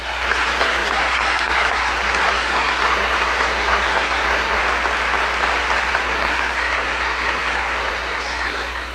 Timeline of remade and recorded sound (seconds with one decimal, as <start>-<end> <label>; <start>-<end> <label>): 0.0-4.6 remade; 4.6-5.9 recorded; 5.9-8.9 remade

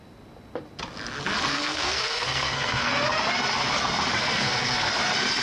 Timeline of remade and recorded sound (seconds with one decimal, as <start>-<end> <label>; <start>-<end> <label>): 0.0-1.5 recorded; 1.5-2.9 remade; 2.9-4.2 recorded; 4.2-4.9 remade; 4.9-5.4 recorded

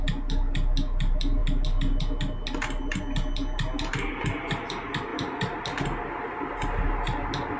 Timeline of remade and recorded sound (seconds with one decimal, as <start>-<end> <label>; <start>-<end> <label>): 0.0-7.6 recorded

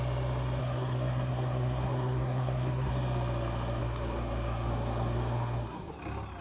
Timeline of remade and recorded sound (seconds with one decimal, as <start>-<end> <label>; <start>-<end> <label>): 0.0-0.6 recorded; 0.6-2.9 remade; 2.9-3.8 recorded; 3.8-5.9 remade; 5.9-6.4 recorded

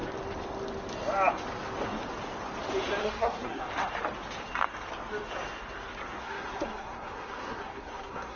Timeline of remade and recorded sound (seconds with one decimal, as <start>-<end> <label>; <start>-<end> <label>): 0.0-3.0 recorded; 3.0-3.6 remade; 3.6-6.2 recorded; 6.2-8.4 remade